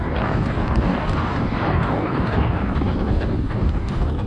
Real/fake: fake